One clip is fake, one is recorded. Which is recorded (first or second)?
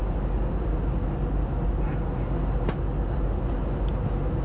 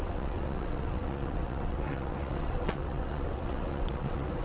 first